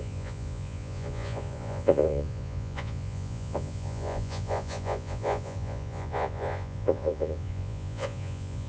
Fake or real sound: fake